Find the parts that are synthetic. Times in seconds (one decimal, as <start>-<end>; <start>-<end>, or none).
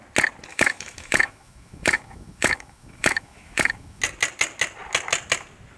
0.5-4.0